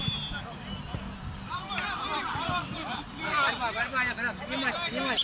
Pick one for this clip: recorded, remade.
recorded